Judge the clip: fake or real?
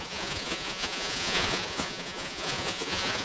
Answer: fake